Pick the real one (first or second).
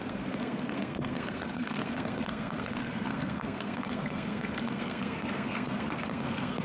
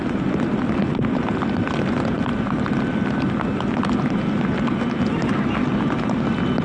second